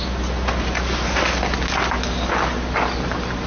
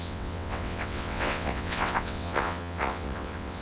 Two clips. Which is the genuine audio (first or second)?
first